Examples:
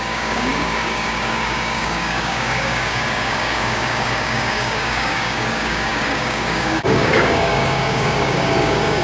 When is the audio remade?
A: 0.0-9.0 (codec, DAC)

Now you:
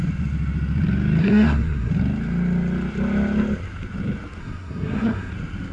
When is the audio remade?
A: 1.2-1.9 (codec, SNAC); 4.4-5.3

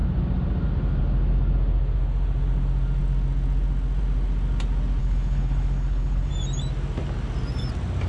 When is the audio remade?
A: 5.0-6.3 (codec, HILCodec)